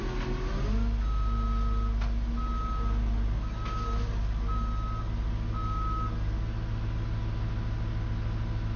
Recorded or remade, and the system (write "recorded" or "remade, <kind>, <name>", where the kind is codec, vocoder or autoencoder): recorded